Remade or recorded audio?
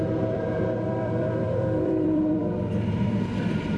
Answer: remade